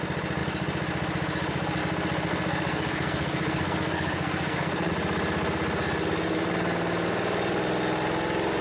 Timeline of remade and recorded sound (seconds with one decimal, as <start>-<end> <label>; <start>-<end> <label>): 0.0-2.3 recorded; 2.3-4.9 remade; 4.9-8.6 recorded